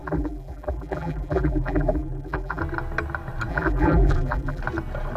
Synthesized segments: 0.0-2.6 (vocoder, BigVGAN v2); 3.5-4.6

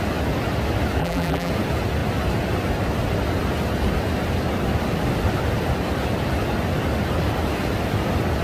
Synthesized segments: 1.0-1.5 (vocoder, BigVGAN v2)